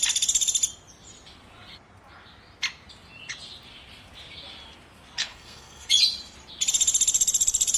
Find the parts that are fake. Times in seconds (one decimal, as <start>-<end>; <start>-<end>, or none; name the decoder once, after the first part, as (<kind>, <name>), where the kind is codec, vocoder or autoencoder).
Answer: 5.2-5.9 (codec, SNAC)